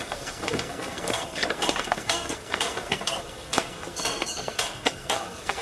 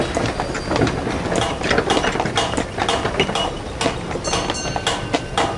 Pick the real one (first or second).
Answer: second